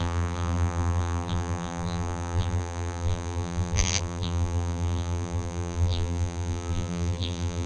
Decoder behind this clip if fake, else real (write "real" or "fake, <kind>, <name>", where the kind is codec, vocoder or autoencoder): fake, vocoder, BigVGAN v2